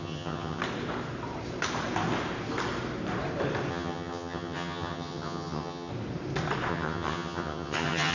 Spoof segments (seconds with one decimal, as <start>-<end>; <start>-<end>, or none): 0.0-0.6; 3.7-5.9; 6.7-8.1